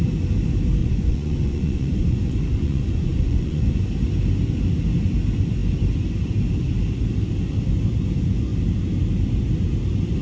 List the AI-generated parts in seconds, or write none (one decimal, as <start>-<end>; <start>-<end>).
0.8-3.7